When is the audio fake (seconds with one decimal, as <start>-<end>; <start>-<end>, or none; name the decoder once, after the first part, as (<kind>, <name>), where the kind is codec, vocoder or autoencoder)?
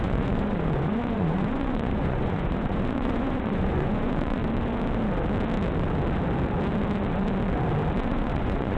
0.0-4.4 (vocoder, Vocos); 8.1-8.8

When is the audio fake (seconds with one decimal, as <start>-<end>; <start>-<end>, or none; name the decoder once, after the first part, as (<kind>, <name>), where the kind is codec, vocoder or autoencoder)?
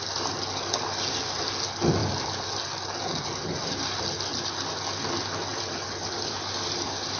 none